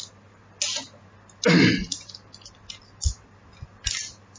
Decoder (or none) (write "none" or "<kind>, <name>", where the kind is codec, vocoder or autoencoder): none